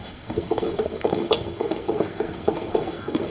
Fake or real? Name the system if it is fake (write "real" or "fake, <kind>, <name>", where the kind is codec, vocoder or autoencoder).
fake, codec, SNAC